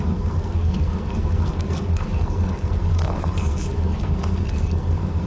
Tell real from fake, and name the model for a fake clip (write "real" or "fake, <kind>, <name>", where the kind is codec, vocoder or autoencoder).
fake, codec, SNAC